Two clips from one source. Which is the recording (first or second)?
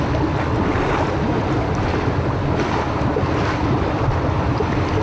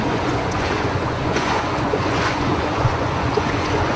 first